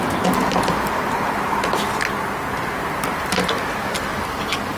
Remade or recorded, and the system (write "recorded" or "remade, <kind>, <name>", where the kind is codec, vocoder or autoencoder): recorded